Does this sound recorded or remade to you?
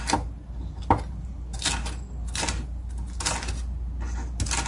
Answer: recorded